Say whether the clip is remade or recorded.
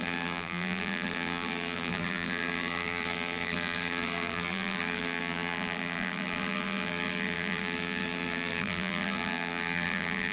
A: remade